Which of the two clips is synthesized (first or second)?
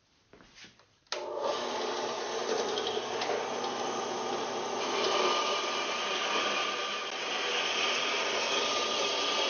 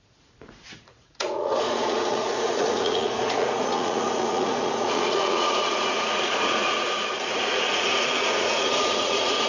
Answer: second